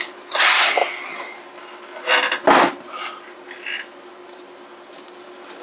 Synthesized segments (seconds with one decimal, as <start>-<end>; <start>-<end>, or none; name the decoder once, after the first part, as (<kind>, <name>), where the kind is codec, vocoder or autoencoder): none